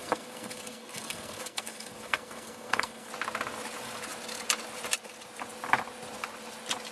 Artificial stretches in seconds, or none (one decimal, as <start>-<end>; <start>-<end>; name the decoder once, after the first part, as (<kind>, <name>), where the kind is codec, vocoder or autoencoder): 0.0-3.1 (codec, SNAC)